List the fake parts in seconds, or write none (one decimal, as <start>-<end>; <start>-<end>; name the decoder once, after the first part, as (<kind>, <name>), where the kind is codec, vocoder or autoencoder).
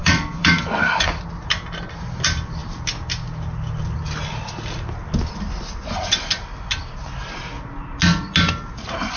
0.0-1.2 (codec, DAC)